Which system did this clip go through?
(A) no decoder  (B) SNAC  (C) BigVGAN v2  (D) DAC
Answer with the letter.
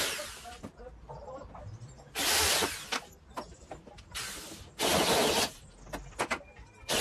A